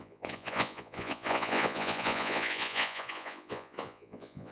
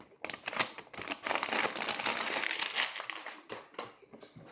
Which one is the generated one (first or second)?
first